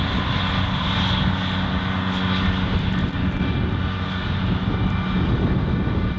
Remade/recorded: recorded